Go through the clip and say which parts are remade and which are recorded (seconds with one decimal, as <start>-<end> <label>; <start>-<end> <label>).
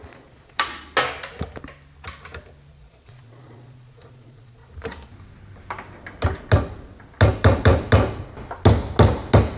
0.0-0.7 remade; 0.7-2.7 recorded; 2.7-4.6 remade; 4.6-9.6 recorded